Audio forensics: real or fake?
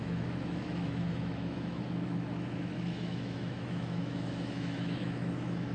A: fake